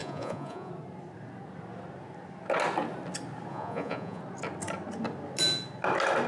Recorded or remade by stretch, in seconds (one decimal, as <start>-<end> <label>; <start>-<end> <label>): 0.0-0.7 remade; 0.7-3.5 recorded; 3.5-4.2 remade; 4.2-6.3 recorded